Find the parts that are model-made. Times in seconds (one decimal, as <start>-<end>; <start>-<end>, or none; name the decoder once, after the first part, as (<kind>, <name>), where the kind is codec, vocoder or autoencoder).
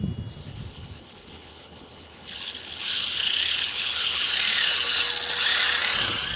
0.4-4.2 (codec, HILCodec)